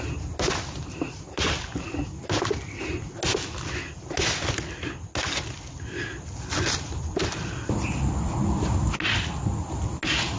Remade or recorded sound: recorded